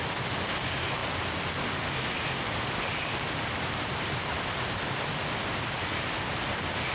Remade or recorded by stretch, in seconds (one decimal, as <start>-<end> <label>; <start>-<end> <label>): 0.0-6.9 recorded